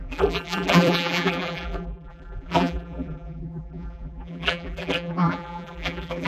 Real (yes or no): no